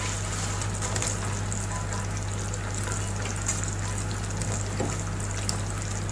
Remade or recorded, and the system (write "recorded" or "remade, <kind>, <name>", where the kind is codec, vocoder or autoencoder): recorded